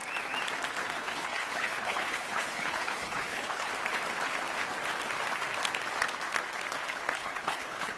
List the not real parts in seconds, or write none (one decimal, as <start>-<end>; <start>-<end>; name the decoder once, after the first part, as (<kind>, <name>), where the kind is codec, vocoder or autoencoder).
1.0-3.7 (codec, HILCodec); 7.2-8.0